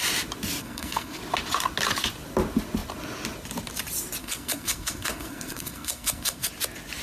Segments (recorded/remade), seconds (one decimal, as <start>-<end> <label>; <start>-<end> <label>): 0.0-0.6 recorded; 0.6-1.2 remade; 1.2-4.2 recorded; 4.2-6.5 remade; 6.5-7.0 recorded